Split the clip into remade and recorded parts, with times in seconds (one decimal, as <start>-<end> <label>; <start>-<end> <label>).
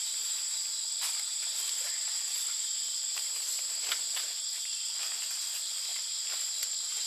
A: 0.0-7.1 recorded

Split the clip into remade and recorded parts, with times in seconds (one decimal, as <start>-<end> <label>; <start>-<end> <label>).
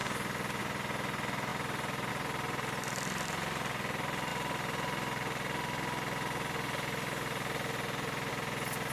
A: 0.0-8.9 remade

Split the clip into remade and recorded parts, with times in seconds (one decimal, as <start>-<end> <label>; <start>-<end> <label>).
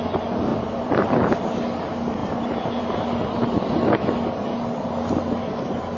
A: 0.0-0.5 recorded; 0.5-1.3 remade; 1.3-2.2 recorded; 2.2-2.8 remade; 2.8-6.0 recorded